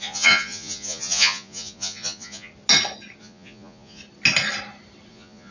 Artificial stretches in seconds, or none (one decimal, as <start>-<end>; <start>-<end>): 0.0-2.5; 3.2-4.0; 5.1-5.5